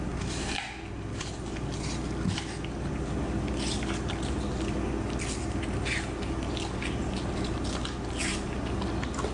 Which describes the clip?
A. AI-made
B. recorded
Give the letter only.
B